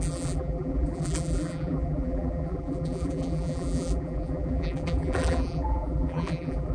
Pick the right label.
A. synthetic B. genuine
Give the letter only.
A